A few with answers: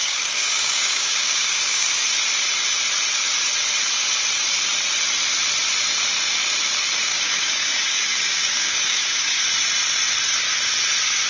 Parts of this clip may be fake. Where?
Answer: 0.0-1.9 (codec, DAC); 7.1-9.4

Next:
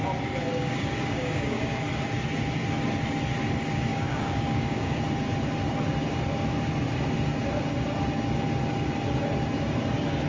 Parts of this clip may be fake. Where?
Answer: 0.5-1.8 (codec, DAC); 3.9-5.0

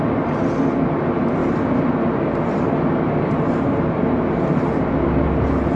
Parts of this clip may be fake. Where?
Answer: none

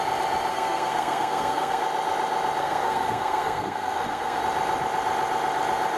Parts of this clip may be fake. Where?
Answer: 0.5-1.8 (codec, SNAC); 2.6-4.4

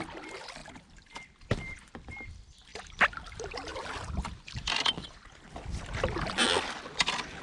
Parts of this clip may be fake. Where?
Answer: none

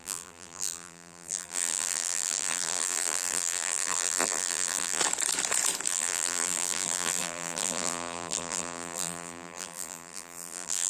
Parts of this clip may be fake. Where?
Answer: 0.0-5.0 (vocoder, BigVGAN v2); 5.9-10.9

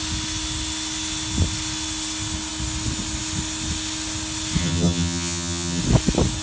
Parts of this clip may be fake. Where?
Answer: 4.6-5.8 (vocoder, HiFi-GAN)